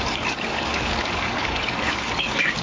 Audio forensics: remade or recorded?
remade